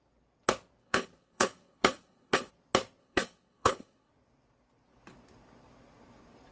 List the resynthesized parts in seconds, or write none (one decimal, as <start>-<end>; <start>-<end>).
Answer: 0.8-2.5; 3.0-4.1